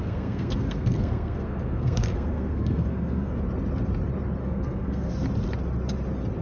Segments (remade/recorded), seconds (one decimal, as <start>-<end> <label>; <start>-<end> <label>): 0.0-3.4 remade; 3.4-4.4 recorded; 4.4-5.1 remade; 5.1-6.4 recorded